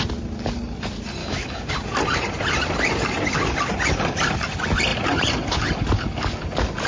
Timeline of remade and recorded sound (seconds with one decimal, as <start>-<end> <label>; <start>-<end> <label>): 0.0-1.2 recorded; 1.2-1.7 remade; 1.7-6.9 recorded